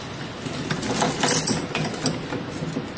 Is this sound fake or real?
real